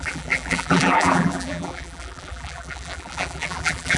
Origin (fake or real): fake